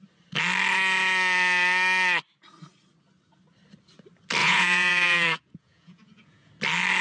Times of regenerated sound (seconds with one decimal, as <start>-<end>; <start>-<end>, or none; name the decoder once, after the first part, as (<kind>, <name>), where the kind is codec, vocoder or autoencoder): 4.4-6.5 (vocoder, Vocos)